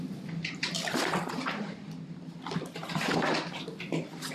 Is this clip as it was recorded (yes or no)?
yes